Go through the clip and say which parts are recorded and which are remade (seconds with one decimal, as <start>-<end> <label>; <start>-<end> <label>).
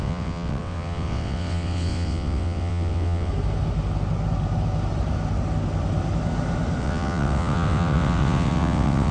0.0-3.3 remade; 3.3-6.8 recorded; 6.8-9.1 remade